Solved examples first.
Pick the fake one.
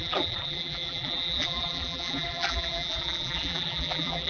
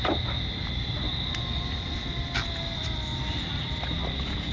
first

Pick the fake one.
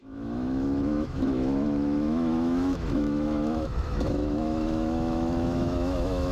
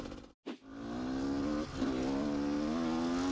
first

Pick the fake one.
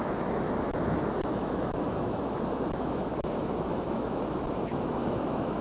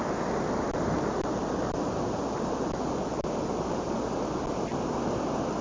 first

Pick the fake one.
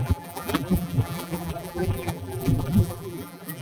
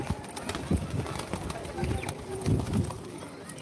first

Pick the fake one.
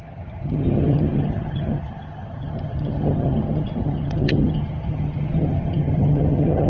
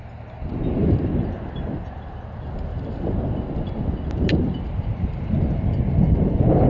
first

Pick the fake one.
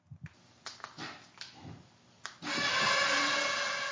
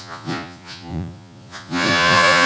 second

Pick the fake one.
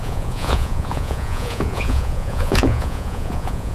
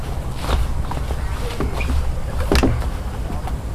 first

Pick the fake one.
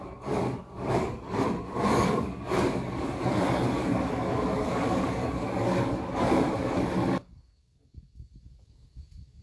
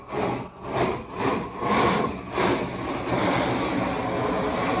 first